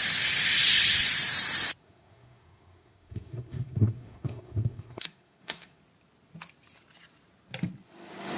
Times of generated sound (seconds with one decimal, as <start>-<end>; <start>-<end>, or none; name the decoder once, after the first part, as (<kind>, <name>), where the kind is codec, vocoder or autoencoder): 1.8-5.8 (codec, SNAC)